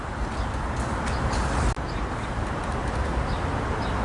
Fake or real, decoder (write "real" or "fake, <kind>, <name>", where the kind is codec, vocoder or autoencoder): real